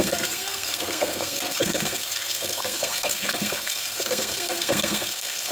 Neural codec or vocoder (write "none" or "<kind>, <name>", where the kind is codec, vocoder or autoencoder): codec, SNAC